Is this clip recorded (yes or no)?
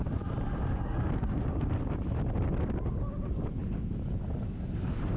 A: yes